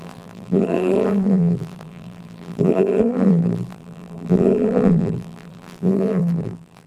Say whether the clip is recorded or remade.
remade